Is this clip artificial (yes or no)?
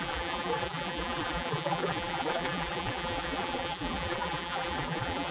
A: yes